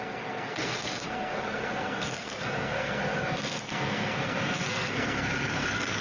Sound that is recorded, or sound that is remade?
remade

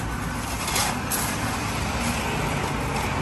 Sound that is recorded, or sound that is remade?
recorded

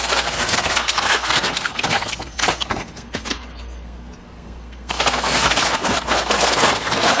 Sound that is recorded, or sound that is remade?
remade